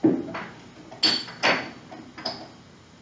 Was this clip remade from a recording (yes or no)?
no